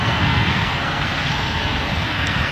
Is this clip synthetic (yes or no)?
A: yes